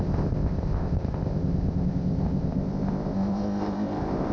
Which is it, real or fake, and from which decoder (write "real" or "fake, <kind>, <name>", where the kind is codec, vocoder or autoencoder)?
fake, codec, ZipCodec